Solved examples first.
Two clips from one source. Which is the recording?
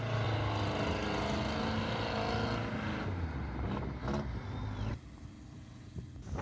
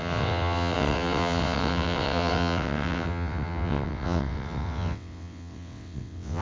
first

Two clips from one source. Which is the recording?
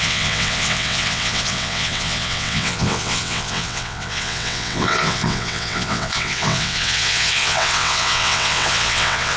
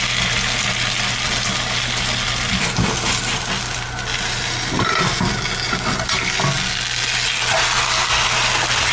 second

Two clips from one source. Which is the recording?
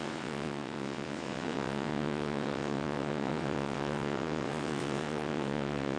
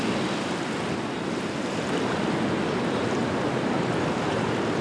second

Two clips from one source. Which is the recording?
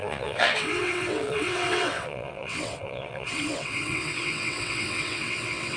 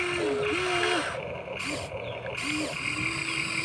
second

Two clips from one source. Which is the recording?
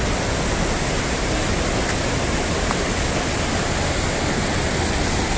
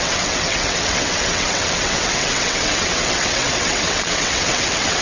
first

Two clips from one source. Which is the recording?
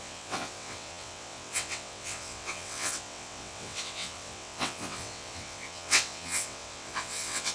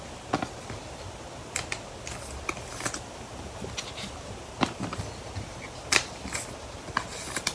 second